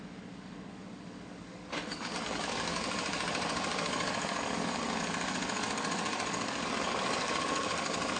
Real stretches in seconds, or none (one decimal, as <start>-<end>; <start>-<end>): none